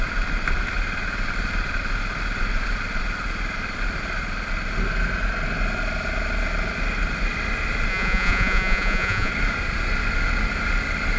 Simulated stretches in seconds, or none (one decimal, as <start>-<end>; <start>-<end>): 7.9-9.3